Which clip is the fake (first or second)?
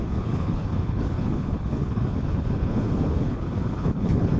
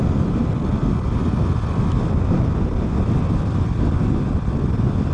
first